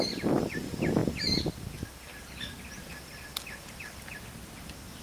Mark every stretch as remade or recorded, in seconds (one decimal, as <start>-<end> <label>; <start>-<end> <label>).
0.0-4.4 recorded; 4.4-5.0 remade